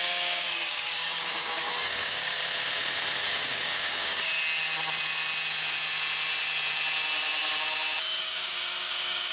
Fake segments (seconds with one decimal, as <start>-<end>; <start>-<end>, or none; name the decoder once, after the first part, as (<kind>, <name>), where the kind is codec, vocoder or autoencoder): 0.0-2.4 (codec, DAC); 3.2-4.3; 8.2-9.3